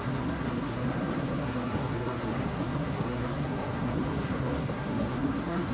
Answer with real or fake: fake